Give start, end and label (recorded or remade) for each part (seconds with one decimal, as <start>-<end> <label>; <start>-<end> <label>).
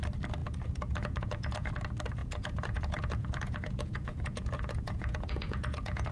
0.0-0.4 recorded; 0.4-1.7 remade; 1.7-2.2 recorded; 2.2-6.1 remade